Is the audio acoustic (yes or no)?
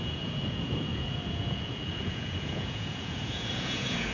no